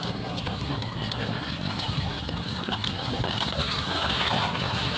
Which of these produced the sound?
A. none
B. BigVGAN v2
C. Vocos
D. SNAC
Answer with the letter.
D